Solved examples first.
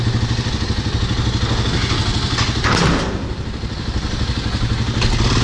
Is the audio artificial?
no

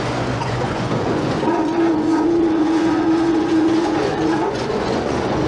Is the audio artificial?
yes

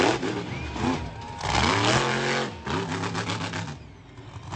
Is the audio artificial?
no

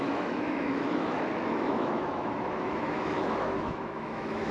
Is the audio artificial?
yes